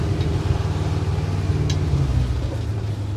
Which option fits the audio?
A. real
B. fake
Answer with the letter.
A